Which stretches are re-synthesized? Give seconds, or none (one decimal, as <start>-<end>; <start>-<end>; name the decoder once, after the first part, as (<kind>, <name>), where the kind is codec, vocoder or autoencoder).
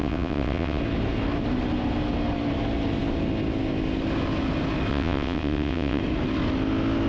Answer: 0.0-0.8 (vocoder, WaveNeXt); 4.9-6.0